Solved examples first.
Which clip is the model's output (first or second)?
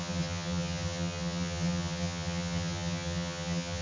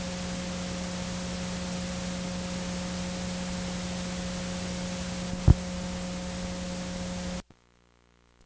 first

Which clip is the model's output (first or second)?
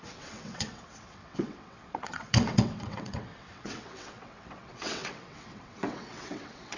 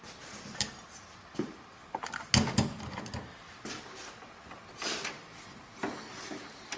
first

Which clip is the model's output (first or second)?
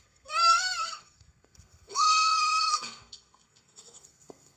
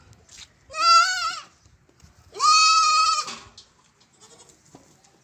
first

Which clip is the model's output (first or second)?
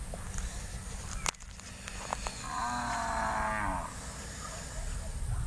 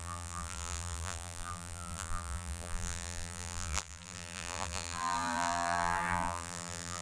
second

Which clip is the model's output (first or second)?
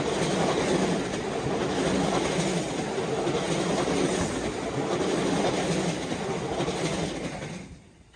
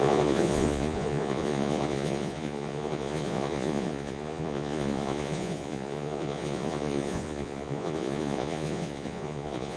second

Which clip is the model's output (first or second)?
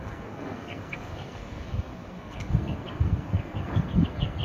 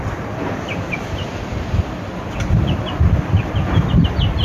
first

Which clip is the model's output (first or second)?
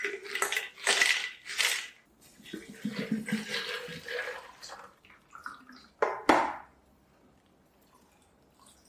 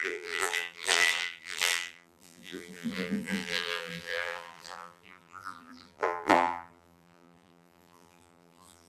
second